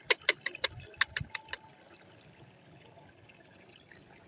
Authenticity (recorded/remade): recorded